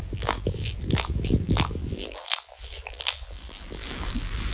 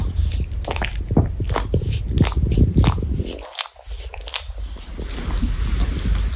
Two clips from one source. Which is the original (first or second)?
second